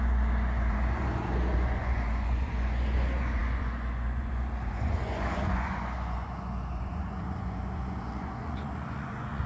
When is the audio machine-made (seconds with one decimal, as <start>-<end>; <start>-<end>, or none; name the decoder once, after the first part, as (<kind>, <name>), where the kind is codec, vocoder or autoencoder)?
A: 0.0-9.5 (vocoder, Vocos)